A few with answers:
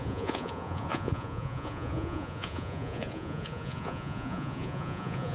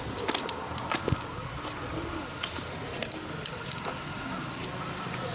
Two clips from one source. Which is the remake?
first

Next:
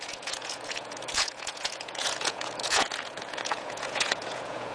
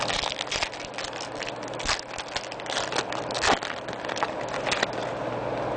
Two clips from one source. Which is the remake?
first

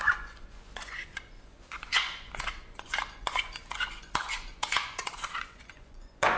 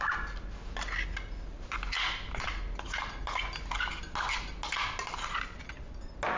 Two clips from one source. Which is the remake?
first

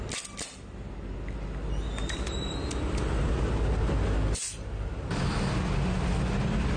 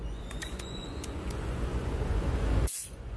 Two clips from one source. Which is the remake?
second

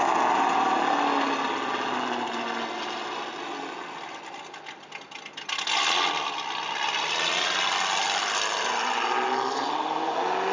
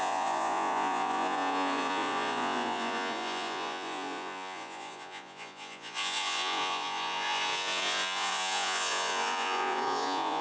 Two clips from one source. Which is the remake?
second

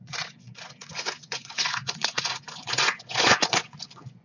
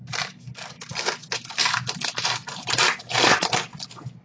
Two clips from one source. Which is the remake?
first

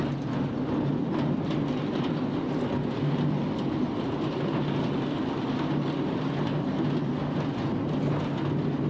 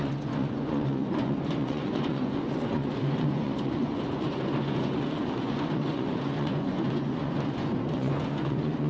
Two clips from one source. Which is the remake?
second